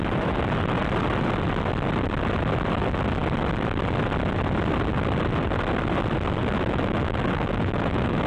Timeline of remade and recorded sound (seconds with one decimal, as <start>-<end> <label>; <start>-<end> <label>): 0.0-6.4 recorded; 6.4-8.3 remade